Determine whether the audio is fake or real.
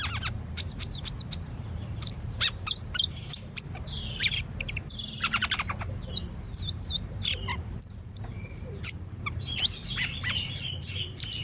fake